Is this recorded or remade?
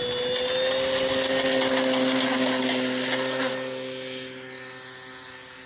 recorded